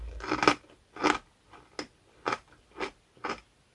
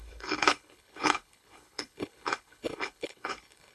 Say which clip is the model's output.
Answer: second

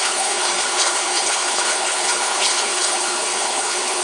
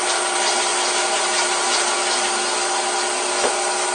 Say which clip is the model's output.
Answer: first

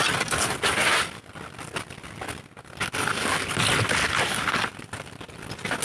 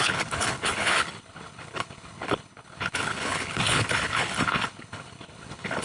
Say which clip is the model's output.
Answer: second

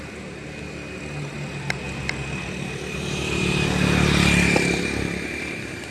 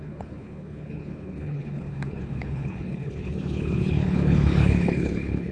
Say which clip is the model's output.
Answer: second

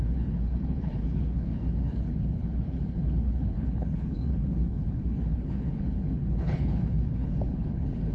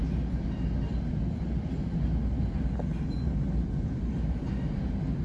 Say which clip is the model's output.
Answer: first